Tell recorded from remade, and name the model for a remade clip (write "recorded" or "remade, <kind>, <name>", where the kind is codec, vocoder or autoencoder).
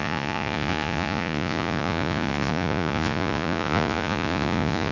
remade, vocoder, Vocos